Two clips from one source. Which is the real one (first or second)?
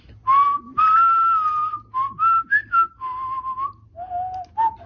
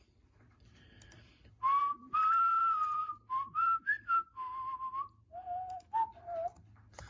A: first